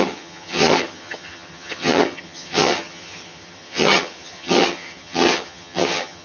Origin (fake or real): fake